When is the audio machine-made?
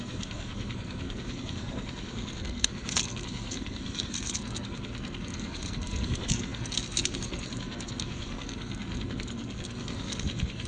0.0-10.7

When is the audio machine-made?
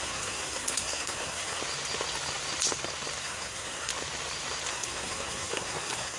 0.0-1.6; 3.2-3.9; 4.7-6.2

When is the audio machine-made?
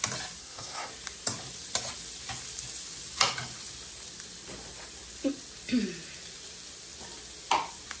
0.4-0.9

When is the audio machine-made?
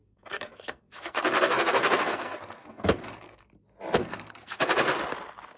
0.0-3.4; 4.0-4.7